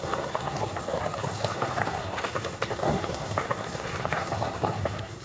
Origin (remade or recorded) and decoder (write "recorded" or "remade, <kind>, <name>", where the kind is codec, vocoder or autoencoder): remade, codec, SNAC